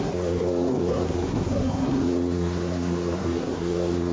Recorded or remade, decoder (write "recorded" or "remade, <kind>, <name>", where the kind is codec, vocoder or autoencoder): remade, codec, SNAC